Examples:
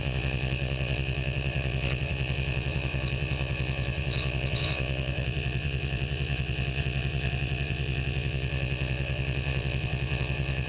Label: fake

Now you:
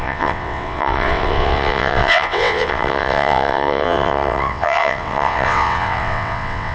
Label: fake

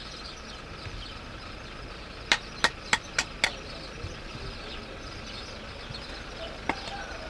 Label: real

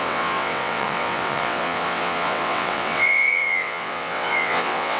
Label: fake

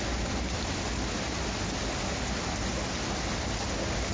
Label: real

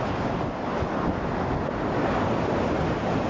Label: real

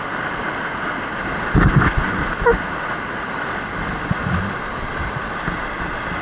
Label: real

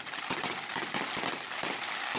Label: real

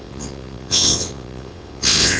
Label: fake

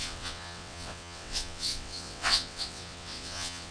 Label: fake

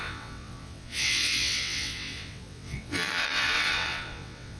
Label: fake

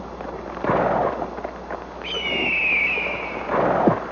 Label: real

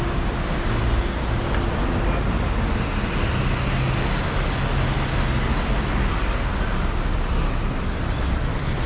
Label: real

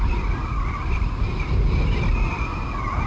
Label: real